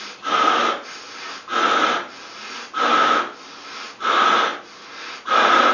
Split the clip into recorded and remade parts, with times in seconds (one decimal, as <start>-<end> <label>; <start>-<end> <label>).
0.0-5.7 recorded